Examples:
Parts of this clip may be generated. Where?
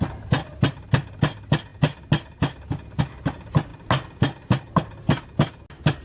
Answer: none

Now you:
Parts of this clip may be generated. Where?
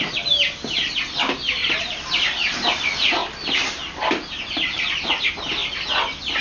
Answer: 0.0-1.6 (vocoder, BigVGAN v2); 2.5-3.2; 4.0-5.6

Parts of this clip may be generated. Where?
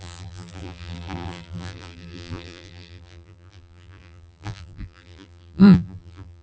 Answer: 0.0-6.4 (vocoder, BigVGAN v2)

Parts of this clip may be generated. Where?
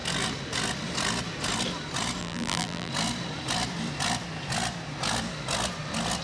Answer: 2.2-2.9 (vocoder, BigVGAN v2)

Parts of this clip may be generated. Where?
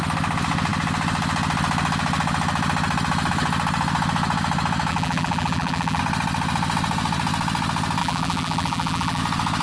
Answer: 4.9-6.0 (vocoder, BigVGAN v2); 8.0-9.2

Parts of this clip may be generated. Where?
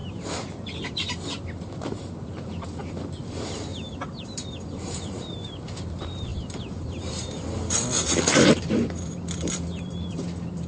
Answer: 1.4-3.7 (vocoder, BigVGAN v2); 4.2-10.7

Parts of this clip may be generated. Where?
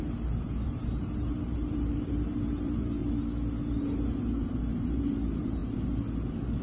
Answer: 0.0-3.0 (vocoder, BigVGAN v2); 3.7-5.6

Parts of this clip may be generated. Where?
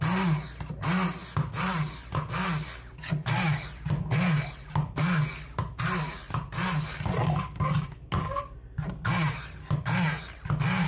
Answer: none